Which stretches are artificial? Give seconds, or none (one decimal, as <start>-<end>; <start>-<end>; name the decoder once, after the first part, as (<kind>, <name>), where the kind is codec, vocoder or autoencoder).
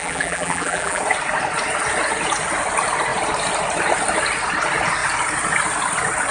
0.0-1.0 (vocoder, BigVGAN v2)